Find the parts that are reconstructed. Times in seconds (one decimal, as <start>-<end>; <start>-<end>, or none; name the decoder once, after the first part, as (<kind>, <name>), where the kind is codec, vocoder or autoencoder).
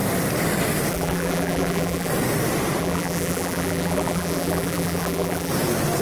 0.9-2.1 (vocoder, BigVGAN v2); 2.8-5.5